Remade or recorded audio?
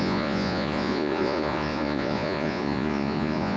remade